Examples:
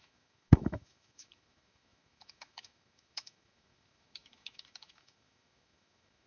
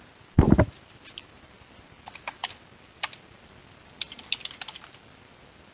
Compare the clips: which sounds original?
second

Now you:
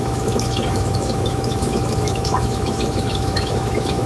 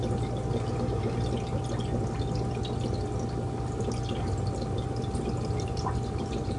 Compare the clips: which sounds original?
second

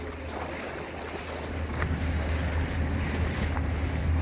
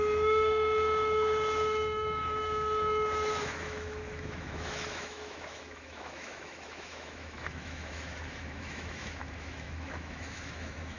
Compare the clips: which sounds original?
first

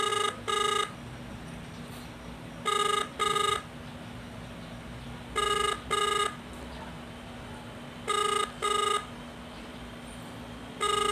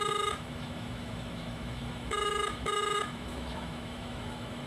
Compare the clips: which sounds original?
first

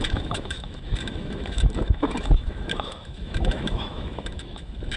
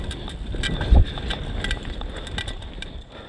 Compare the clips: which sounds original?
second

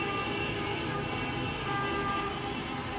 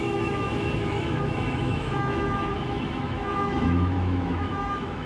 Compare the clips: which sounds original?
first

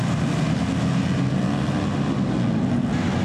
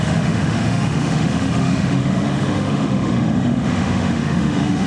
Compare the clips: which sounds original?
first